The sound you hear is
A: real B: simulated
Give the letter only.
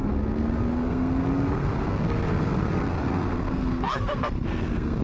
B